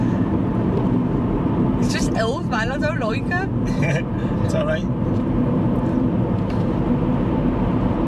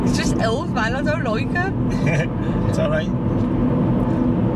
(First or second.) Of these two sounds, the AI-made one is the first